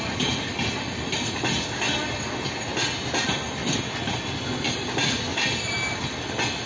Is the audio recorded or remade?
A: recorded